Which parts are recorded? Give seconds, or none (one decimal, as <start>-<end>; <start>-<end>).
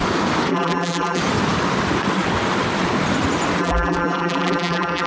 0.0-0.5; 1.2-3.6